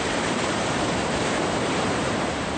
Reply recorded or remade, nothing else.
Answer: remade